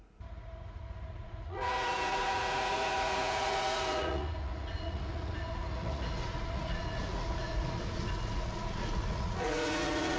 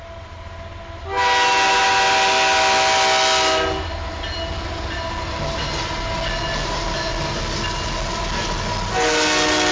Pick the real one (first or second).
second